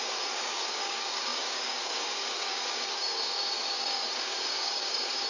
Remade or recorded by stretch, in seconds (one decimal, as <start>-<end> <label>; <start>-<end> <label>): 0.0-5.3 remade